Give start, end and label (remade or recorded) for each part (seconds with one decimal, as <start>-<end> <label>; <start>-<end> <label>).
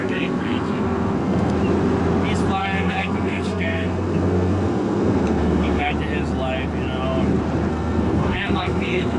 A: 0.0-1.6 remade; 1.6-2.6 recorded; 2.6-5.9 remade; 5.9-7.7 recorded; 7.7-9.2 remade